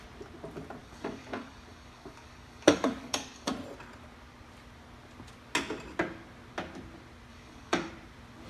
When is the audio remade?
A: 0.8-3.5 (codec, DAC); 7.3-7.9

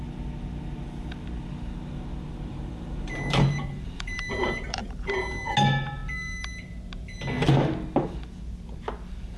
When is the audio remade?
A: 2.5-5.2 (vocoder, BigVGAN v2)